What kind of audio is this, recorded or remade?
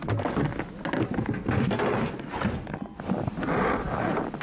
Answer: recorded